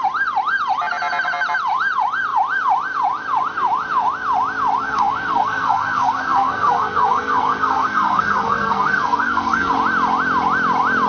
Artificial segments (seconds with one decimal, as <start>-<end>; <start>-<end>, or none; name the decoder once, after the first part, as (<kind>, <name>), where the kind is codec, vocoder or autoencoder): 4.8-9.7 (codec, SNAC)